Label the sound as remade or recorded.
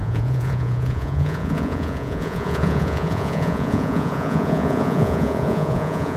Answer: remade